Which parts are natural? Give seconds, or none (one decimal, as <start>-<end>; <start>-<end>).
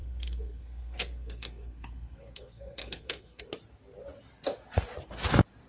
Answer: 3.4-5.7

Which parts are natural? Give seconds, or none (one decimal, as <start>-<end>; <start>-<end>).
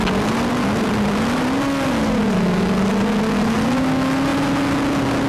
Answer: 0.0-5.3